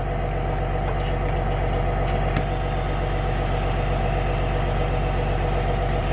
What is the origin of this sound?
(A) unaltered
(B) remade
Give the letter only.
A